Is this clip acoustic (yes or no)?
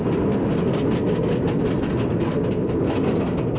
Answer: yes